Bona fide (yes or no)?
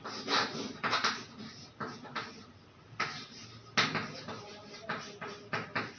yes